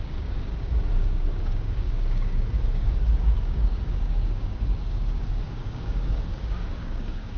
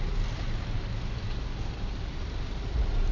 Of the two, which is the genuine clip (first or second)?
second